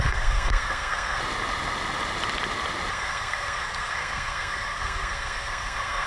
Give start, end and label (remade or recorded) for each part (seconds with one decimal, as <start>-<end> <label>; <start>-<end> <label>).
0.0-1.2 remade; 1.2-2.9 recorded; 2.9-6.1 remade